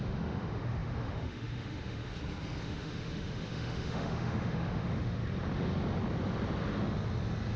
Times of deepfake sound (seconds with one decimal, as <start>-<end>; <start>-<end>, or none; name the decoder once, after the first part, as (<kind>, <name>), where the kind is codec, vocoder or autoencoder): 0.0-2.1 (autoencoder, DAC-VAE); 2.6-5.2